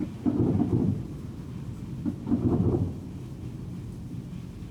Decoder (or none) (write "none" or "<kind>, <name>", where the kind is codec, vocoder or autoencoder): none